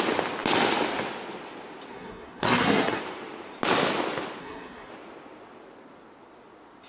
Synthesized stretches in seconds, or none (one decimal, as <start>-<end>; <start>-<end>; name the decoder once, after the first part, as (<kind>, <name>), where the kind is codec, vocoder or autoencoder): 1.9-3.0 (codec, SNAC); 4.4-4.9